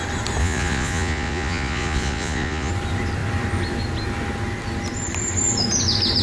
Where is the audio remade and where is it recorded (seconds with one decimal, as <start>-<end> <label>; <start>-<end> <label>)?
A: 0.0-0.4 recorded; 0.4-2.7 remade; 2.7-6.2 recorded

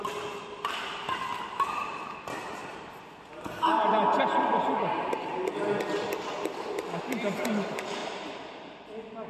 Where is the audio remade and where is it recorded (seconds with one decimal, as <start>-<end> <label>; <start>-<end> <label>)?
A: 0.0-8.0 recorded; 8.0-8.8 remade; 8.8-9.3 recorded